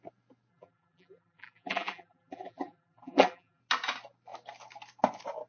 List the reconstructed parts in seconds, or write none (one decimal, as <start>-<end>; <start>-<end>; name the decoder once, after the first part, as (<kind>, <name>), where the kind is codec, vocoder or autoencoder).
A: 0.5-3.6 (vocoder, BigVGAN v2)